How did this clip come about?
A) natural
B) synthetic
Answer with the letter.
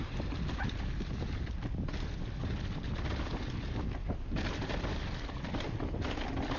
A